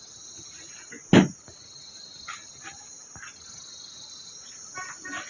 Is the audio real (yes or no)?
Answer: yes